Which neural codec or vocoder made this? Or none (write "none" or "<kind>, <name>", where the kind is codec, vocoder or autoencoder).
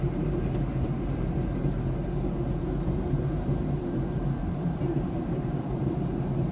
vocoder, BigVGAN v2